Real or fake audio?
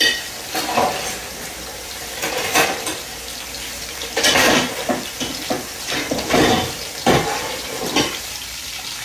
fake